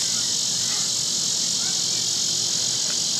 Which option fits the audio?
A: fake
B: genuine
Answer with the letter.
B